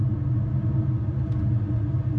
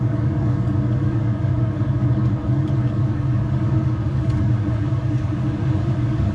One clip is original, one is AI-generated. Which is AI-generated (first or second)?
second